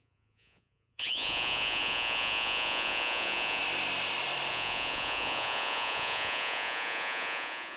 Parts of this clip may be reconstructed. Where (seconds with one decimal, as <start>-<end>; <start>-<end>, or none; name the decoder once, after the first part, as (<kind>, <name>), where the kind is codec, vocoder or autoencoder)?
0.0-3.6 (vocoder, Vocos); 4.5-7.8